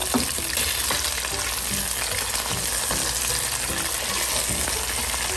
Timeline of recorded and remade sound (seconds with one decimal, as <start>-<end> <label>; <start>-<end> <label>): 0.0-5.4 recorded